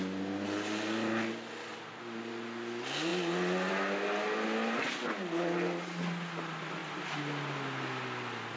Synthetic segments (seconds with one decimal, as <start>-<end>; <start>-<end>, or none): none